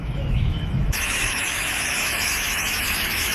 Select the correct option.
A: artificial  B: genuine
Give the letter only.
A